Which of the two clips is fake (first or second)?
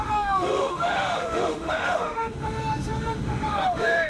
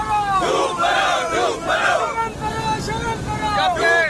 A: first